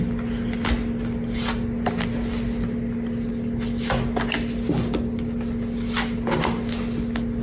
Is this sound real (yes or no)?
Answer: yes